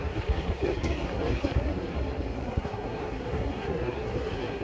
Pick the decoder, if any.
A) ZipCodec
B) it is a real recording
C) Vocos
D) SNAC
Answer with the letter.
D